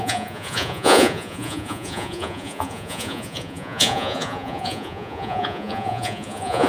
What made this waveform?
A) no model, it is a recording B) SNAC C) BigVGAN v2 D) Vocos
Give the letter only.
D